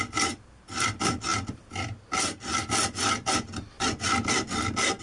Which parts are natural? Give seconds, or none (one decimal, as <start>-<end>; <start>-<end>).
0.0-5.0

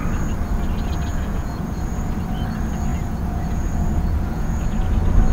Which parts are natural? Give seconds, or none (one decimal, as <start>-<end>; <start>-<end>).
0.0-1.1; 2.1-2.9; 4.8-5.3

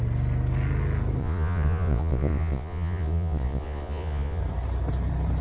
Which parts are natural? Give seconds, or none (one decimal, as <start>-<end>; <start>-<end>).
0.0-1.2; 4.4-5.4

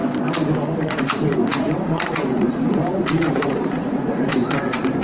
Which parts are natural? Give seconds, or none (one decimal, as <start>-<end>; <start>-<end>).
0.0-0.8